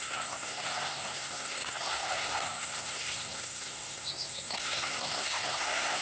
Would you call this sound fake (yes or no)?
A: yes